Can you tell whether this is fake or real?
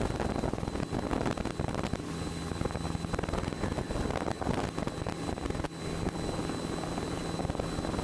real